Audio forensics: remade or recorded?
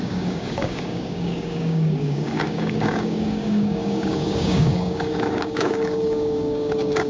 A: remade